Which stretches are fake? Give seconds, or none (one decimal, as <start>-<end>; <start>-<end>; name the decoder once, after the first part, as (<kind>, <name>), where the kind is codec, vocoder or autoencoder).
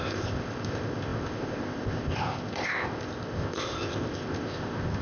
0.0-5.0 (codec, ZipCodec)